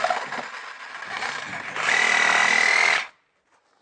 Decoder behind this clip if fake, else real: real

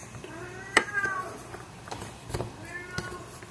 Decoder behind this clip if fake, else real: real